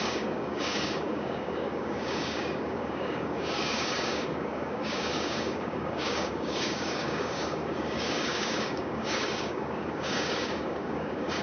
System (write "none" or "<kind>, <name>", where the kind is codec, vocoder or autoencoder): codec, DAC